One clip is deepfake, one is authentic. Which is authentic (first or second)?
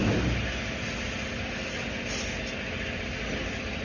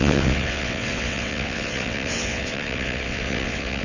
first